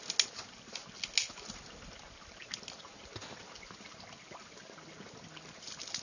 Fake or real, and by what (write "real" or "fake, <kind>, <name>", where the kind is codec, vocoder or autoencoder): real